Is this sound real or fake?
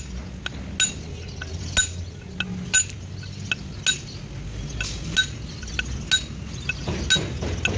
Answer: real